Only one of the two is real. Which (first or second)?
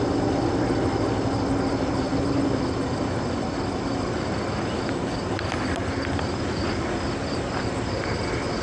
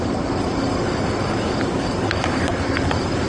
first